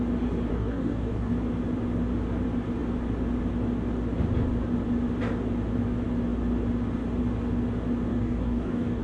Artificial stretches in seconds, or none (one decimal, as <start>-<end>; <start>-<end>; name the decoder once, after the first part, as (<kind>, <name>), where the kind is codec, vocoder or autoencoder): 0.5-1.3 (codec, DAC); 8.1-9.0